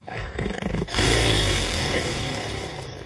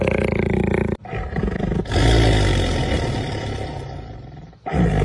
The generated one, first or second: first